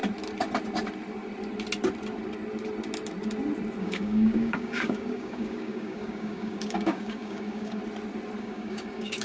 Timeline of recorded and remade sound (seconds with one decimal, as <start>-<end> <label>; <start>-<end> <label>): 0.0-3.8 recorded; 3.8-7.8 remade; 7.8-8.4 recorded; 8.4-9.2 remade